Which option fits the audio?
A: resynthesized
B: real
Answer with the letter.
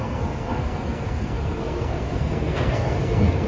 A